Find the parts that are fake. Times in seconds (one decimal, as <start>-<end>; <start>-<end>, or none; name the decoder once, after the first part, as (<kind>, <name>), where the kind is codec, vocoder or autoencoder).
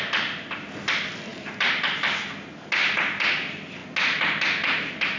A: 1.3-1.8 (vocoder, BigVGAN v2)